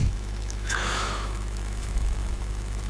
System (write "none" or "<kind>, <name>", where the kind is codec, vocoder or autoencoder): autoencoder, DAC-VAE